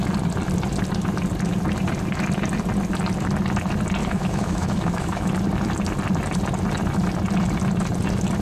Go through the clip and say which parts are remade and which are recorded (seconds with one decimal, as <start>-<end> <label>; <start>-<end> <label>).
0.0-4.0 recorded; 4.0-5.3 remade; 5.3-8.4 recorded